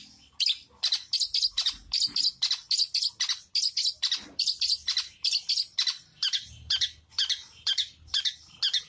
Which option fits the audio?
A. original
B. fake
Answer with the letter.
A